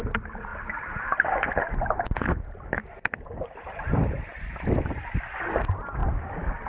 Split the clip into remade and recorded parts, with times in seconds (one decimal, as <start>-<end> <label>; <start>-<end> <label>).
0.0-6.7 recorded